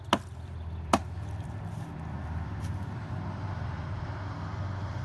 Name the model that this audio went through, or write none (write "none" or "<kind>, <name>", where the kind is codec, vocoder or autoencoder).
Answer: vocoder, BigVGAN v2